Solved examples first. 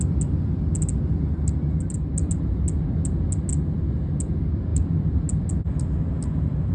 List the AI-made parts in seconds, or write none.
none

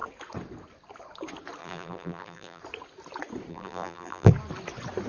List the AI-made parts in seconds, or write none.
1.6-2.6; 3.5-4.3

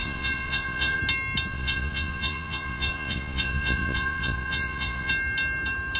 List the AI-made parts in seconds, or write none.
0.0-1.0; 1.5-5.1

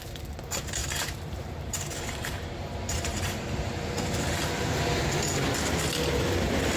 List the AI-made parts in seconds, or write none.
0.8-4.9

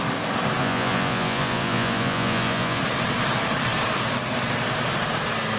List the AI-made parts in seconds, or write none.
0.6-2.8